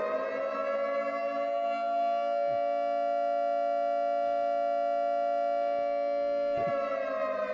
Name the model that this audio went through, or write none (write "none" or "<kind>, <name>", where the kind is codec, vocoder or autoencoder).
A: none